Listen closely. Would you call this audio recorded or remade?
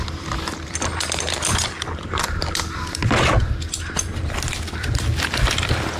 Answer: remade